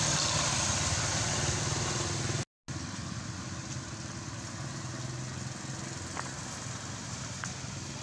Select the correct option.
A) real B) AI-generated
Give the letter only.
A